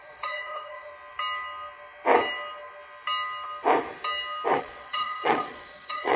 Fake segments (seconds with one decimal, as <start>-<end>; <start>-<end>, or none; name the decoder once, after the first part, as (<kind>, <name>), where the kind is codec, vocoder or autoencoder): 0.0-0.9 (vocoder, Vocos); 4.6-6.2